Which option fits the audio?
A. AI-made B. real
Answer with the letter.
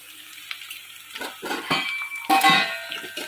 B